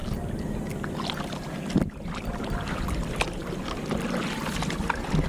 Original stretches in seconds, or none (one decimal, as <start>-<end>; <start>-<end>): 0.0-5.3